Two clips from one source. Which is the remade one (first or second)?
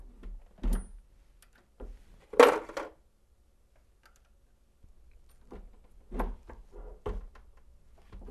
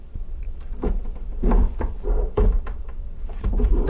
second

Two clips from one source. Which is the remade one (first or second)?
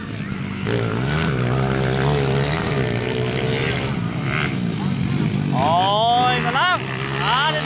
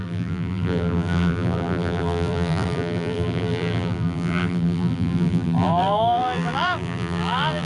second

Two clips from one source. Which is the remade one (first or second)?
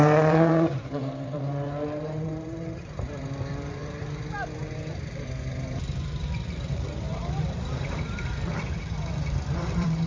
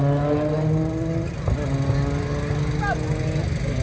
first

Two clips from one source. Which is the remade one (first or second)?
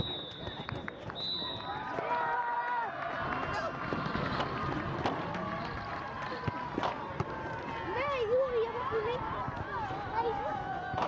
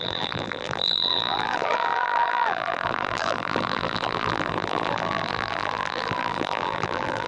second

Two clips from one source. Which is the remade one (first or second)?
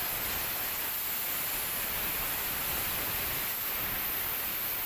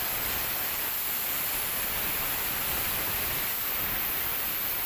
second